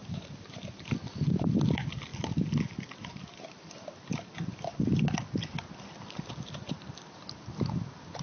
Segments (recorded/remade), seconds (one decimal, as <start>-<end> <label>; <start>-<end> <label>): 0.0-2.1 recorded; 2.1-5.4 remade; 5.4-7.2 recorded; 7.2-7.7 remade; 7.7-8.2 recorded